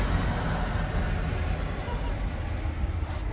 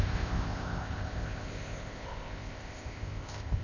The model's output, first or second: second